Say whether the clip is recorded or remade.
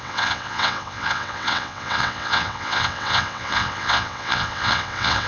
remade